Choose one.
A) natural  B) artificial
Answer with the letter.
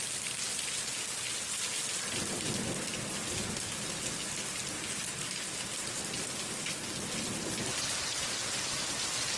A